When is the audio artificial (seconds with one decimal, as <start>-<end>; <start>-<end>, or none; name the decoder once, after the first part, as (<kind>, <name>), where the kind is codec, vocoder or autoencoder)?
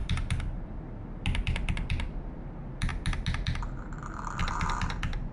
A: none